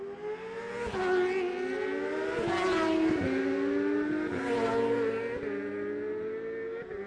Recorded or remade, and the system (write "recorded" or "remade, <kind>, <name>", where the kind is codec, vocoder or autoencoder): recorded